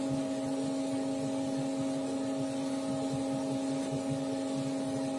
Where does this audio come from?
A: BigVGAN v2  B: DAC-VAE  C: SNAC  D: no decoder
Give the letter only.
D